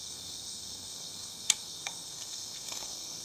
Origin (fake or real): fake